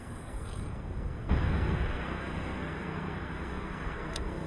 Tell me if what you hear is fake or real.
fake